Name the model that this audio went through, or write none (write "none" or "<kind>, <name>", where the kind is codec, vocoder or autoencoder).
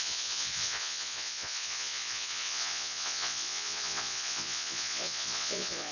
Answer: vocoder, Vocos